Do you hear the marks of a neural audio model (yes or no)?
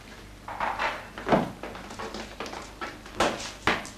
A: no